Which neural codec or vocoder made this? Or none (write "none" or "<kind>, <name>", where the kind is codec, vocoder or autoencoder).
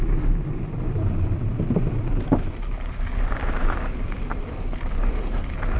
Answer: none